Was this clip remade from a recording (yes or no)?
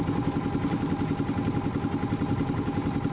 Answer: no